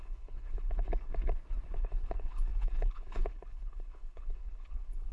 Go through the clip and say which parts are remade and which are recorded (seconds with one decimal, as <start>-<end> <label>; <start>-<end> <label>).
0.0-1.1 remade; 1.1-1.8 recorded; 1.8-5.1 remade